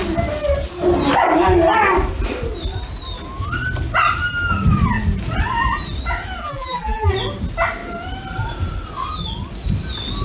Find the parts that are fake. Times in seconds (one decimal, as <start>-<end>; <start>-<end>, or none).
6.4-7.1